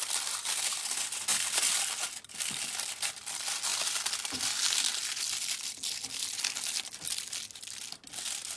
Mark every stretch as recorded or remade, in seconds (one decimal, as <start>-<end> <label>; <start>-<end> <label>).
0.0-3.7 recorded; 3.7-4.4 remade; 4.4-8.6 recorded